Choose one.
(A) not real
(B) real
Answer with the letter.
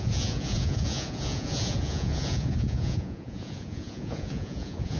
A